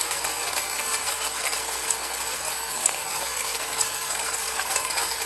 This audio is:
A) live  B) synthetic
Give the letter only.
B